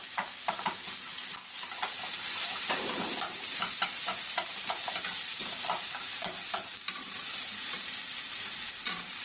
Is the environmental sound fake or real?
fake